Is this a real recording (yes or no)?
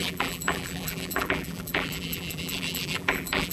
no